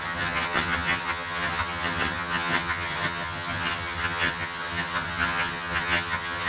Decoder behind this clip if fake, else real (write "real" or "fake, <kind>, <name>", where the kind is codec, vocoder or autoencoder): fake, vocoder, HiFi-GAN